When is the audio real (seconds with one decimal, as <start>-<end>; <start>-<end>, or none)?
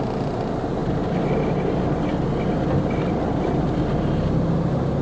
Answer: 0.0-5.0